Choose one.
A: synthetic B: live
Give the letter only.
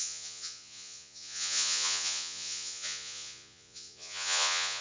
A